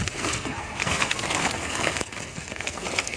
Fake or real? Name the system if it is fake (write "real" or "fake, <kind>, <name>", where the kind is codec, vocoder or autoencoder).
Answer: fake, codec, SNAC